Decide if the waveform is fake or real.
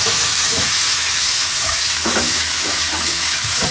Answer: fake